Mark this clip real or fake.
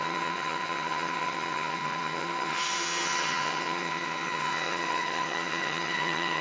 fake